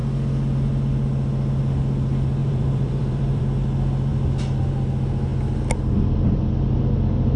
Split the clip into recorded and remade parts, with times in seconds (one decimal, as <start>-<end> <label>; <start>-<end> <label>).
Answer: 0.0-2.4 recorded; 2.4-3.4 remade; 3.4-7.4 recorded